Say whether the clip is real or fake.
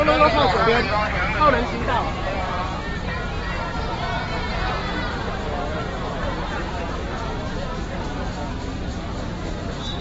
real